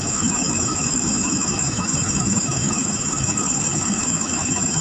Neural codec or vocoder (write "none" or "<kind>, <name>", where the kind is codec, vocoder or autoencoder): autoencoder, DAC-VAE